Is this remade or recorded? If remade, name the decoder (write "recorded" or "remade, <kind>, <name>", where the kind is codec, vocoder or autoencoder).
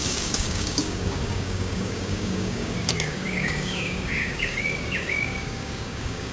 remade, codec, DAC